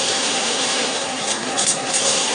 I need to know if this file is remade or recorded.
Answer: remade